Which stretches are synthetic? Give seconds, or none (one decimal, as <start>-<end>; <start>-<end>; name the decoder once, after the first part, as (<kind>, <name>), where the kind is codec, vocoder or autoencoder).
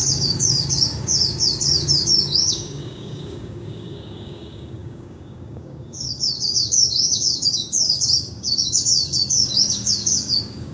0.0-10.7 (codec, DAC)